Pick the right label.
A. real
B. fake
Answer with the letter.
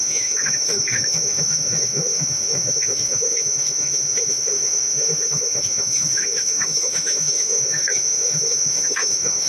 B